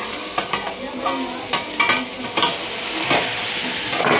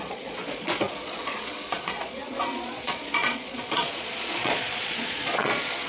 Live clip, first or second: first